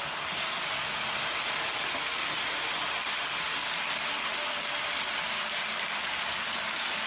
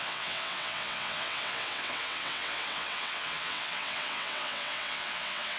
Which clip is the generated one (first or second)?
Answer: second